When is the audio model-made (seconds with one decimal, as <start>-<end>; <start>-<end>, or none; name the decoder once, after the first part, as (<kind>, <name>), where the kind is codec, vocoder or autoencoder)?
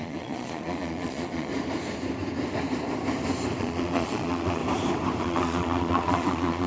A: 0.0-1.5 (vocoder, Vocos); 3.6-4.6; 5.2-6.7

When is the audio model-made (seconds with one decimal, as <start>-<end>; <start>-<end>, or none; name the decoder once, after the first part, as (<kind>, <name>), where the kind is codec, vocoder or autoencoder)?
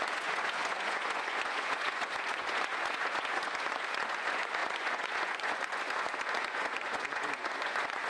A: 0.0-8.1 (vocoder, Vocos)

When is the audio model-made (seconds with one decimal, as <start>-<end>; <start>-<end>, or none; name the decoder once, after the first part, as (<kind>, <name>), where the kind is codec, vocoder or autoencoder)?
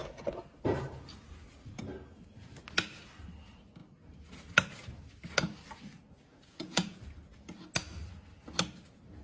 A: 6.3-7.0 (vocoder, Vocos)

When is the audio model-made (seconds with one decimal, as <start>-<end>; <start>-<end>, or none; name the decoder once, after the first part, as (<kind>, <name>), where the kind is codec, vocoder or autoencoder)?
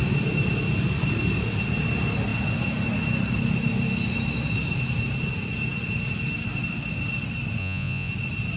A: 7.6-8.1 (vocoder, Vocos)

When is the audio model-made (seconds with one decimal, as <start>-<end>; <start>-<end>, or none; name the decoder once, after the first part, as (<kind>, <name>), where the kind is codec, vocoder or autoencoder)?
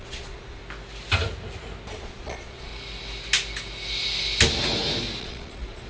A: 0.0-0.6 (vocoder, Vocos); 1.9-2.7; 5.2-5.9